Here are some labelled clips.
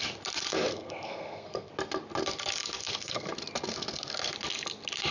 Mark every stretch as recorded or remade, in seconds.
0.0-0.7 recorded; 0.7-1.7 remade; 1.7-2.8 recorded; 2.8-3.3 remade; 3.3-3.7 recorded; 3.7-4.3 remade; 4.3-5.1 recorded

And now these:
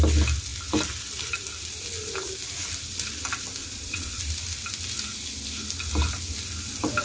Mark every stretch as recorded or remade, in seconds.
0.0-3.6 recorded; 3.6-4.2 remade; 4.2-7.0 recorded

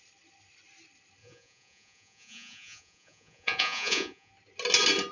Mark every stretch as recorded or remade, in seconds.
0.0-1.2 recorded; 1.2-4.3 remade; 4.3-5.1 recorded

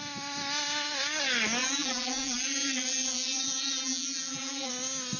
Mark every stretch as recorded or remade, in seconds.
0.0-1.6 recorded; 1.6-4.7 remade; 4.7-5.2 recorded